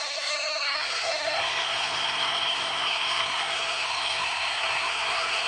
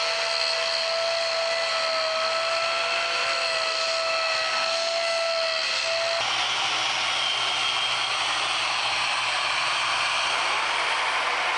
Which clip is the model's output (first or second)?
first